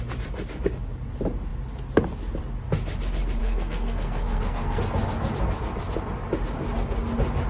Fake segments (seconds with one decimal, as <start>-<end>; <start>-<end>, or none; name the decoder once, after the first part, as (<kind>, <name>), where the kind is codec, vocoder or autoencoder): 3.4-4.8 (codec, SNAC)